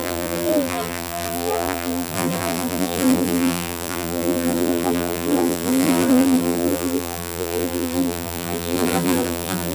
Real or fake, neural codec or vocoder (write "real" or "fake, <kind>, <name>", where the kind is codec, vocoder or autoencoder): fake, vocoder, BigVGAN v2